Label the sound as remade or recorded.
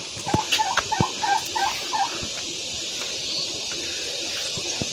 remade